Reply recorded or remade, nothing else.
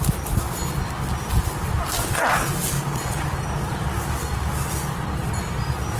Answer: recorded